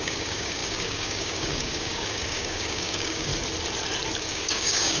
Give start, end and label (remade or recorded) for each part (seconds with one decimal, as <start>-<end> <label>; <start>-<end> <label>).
0.0-3.3 remade; 3.3-4.2 recorded; 4.2-5.0 remade